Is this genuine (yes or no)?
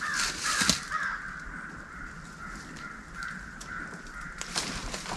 yes